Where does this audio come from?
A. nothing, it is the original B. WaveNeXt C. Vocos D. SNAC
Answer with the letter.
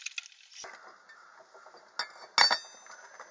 A